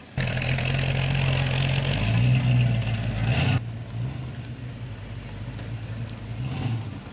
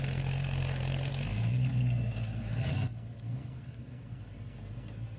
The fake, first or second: second